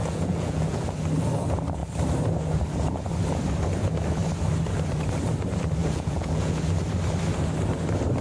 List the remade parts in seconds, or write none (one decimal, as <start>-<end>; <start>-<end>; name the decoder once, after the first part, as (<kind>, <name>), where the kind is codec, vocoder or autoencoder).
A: 0.0-0.8 (vocoder, Vocos); 5.8-6.6